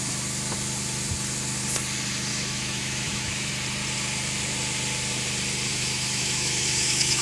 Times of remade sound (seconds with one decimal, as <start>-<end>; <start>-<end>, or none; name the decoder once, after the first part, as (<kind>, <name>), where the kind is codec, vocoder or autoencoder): 2.3-3.5 (autoencoder, DAC-VAE); 5.7-7.2